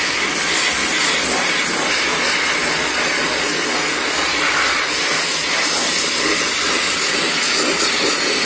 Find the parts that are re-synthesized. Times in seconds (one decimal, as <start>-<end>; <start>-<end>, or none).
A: none